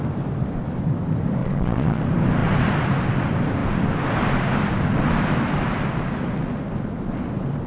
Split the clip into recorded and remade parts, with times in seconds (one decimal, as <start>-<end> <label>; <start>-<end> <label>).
0.0-1.4 recorded; 1.4-2.0 remade; 2.0-7.7 recorded